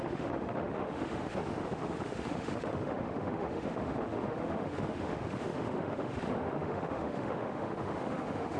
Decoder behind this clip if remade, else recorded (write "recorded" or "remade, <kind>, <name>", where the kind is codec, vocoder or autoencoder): remade, autoencoder, DAC-VAE